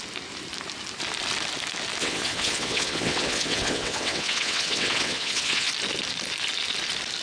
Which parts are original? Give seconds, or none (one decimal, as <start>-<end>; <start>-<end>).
0.0-2.0; 5.7-7.2